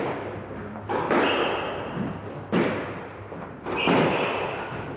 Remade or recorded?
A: recorded